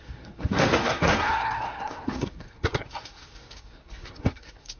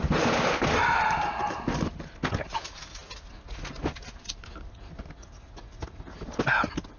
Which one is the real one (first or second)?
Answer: second